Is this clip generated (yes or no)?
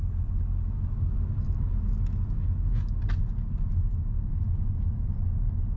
no